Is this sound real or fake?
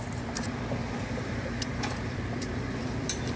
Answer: fake